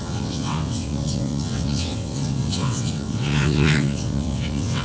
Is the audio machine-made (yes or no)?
yes